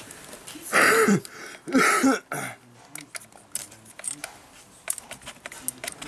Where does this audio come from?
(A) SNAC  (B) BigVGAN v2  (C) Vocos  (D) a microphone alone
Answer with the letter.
D